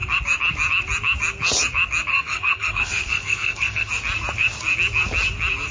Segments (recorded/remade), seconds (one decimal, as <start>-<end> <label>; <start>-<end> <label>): 0.0-2.1 recorded; 2.1-3.9 remade; 3.9-5.7 recorded